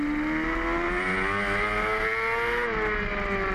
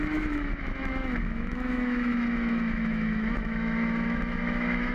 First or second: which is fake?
second